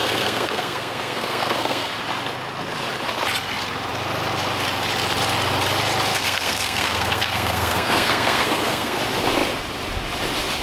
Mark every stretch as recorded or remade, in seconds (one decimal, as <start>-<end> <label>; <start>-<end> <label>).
0.0-1.9 remade; 1.9-6.1 recorded; 6.1-9.0 remade; 9.0-10.6 recorded